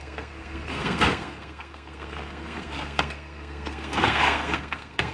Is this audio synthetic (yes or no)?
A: yes